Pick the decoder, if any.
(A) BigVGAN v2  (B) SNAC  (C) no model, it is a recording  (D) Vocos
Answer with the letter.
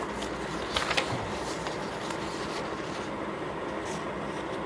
C